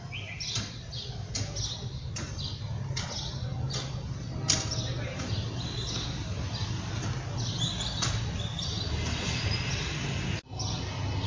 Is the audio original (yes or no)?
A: yes